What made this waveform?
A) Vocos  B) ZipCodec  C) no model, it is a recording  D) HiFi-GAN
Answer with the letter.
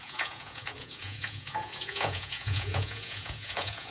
A